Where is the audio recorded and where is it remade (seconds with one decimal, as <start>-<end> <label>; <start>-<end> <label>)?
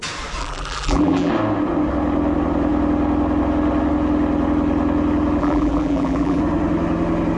0.0-0.4 recorded; 0.4-1.3 remade; 1.3-5.4 recorded; 5.4-6.4 remade; 6.4-7.4 recorded